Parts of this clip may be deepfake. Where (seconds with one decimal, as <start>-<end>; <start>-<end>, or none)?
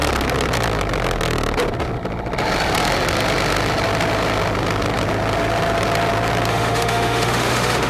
6.5-7.9